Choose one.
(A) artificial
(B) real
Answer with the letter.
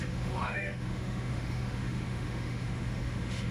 A